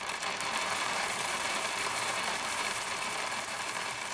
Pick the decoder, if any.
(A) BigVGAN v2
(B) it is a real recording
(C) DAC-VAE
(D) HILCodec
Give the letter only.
A